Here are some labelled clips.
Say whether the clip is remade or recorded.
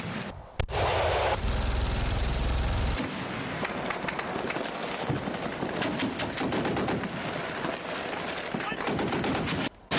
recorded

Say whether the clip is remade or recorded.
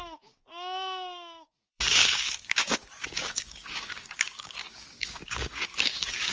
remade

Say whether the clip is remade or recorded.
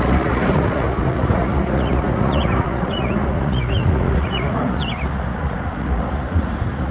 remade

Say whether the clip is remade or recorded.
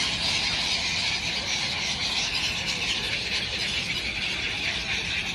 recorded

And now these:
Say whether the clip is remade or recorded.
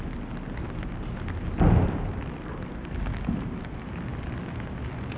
recorded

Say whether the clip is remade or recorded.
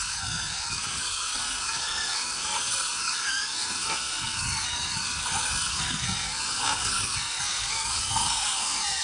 remade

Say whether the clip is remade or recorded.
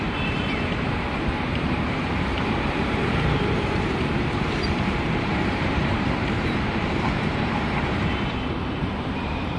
remade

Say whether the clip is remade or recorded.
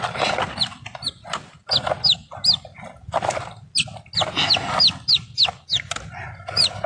recorded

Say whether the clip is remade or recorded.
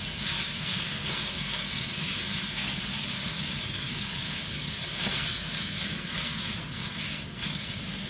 remade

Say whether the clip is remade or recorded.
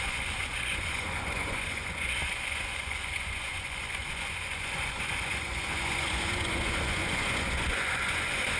remade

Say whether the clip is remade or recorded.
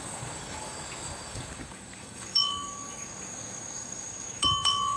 remade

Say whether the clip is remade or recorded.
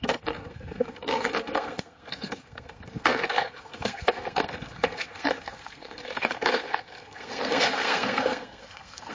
remade